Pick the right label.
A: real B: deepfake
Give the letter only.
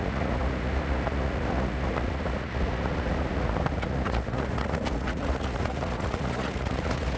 B